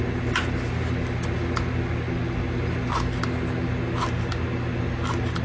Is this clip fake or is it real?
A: real